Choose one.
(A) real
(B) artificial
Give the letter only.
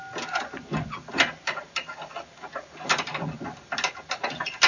A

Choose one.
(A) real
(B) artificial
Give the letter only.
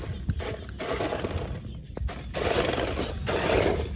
B